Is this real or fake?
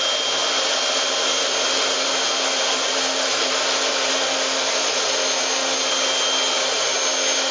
real